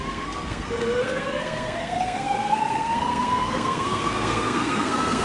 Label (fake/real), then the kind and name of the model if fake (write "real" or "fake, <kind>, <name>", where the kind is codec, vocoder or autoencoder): fake, codec, SNAC